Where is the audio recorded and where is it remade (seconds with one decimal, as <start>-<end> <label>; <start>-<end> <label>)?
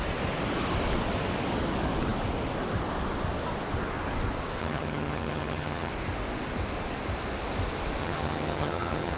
0.0-4.6 recorded; 4.6-5.9 remade; 5.9-8.0 recorded; 8.0-9.2 remade